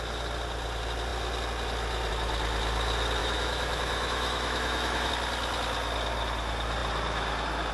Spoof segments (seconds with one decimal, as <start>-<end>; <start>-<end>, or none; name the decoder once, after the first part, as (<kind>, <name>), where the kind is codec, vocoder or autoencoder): 3.2-5.1 (autoencoder, DAC-VAE)